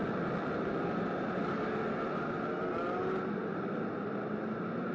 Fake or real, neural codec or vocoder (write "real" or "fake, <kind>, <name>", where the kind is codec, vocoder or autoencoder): real